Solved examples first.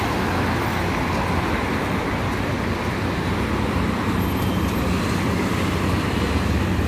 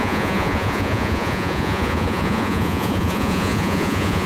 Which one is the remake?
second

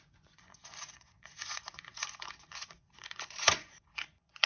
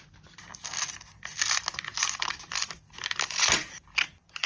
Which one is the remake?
first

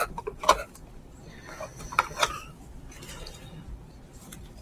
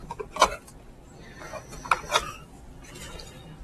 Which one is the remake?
first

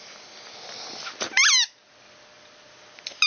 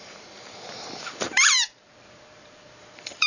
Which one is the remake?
second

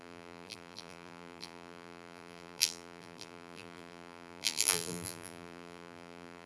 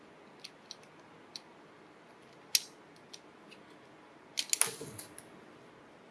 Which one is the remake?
first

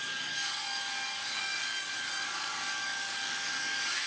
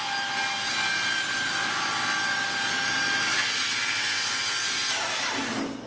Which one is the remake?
first